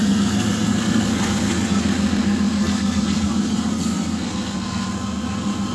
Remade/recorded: remade